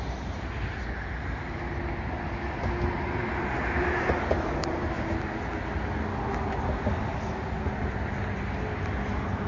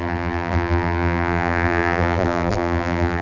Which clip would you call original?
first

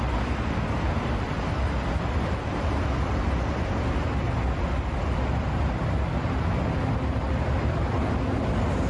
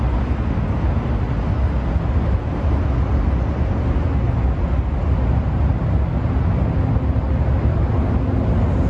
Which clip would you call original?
second